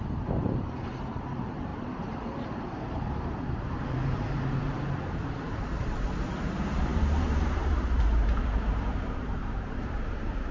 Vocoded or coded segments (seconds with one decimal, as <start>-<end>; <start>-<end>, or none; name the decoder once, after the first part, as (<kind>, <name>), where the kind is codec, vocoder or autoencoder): 0.0-10.5 (vocoder, BigVGAN v2)